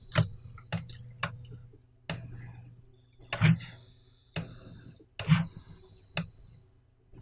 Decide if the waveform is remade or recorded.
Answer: recorded